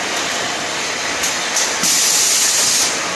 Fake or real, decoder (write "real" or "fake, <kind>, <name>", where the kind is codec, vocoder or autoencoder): real